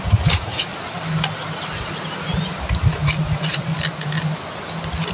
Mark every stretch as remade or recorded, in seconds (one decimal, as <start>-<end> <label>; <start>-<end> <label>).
0.0-0.7 remade; 0.7-2.9 recorded; 2.9-3.7 remade; 3.7-5.1 recorded